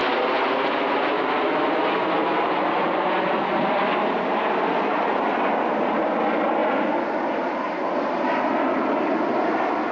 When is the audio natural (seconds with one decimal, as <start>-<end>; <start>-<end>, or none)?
0.0-9.9

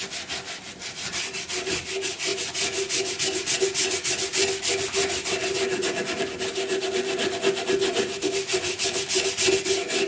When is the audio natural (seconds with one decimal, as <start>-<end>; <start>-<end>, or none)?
0.0-10.1

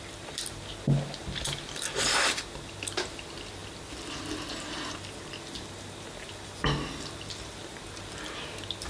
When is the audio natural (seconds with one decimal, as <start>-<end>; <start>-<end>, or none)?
0.0-8.9

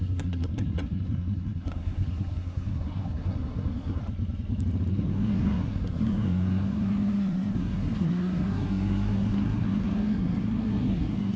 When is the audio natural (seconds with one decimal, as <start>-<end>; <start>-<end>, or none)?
4.0-4.9

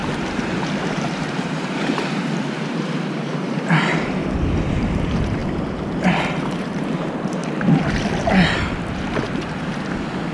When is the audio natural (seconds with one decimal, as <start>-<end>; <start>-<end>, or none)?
4.2-4.7; 5.4-6.4; 7.4-9.2

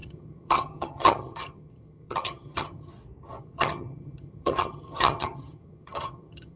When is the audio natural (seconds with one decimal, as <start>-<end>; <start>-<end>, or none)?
2.9-3.4

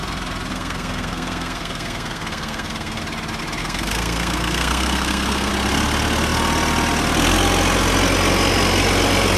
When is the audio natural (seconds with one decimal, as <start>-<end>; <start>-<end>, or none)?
0.0-0.5; 3.0-3.6; 5.5-9.4

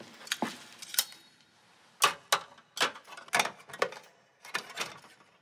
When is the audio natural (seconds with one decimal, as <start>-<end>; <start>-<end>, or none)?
0.0-0.9; 2.0-4.3; 4.9-5.4